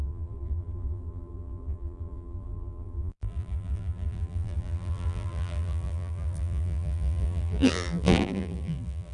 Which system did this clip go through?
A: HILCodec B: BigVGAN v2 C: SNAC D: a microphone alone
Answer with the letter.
B